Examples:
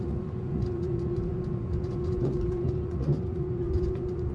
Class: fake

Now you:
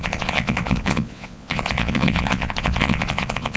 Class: fake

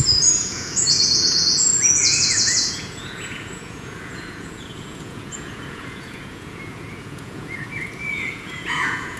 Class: fake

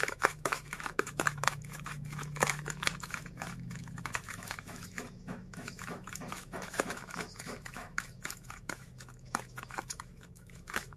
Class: fake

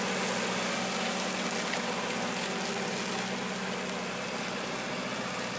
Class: real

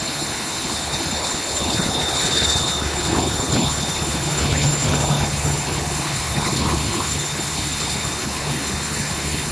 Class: fake